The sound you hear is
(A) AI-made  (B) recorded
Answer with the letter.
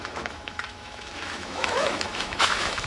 A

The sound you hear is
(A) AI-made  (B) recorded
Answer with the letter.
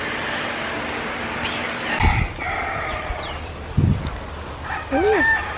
B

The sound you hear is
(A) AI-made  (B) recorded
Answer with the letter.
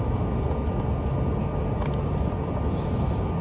B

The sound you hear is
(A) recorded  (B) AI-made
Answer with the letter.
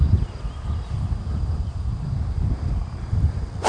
A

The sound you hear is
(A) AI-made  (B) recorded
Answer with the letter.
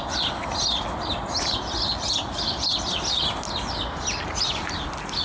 B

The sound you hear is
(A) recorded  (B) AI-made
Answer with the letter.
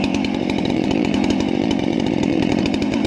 B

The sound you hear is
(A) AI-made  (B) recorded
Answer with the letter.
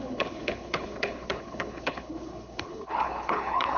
A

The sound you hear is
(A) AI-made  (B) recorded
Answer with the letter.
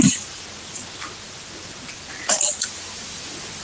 B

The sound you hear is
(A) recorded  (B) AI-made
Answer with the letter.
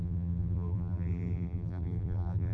B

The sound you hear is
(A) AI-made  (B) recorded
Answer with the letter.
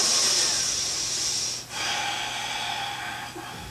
B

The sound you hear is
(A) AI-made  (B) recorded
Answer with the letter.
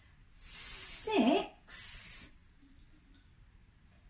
B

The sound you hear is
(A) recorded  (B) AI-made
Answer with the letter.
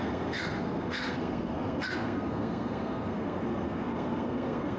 B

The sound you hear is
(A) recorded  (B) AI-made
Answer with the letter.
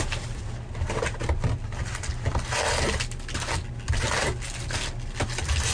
A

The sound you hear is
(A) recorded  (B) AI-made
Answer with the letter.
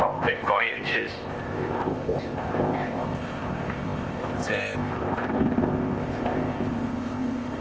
B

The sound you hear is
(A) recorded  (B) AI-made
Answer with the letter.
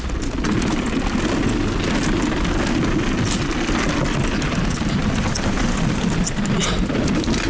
A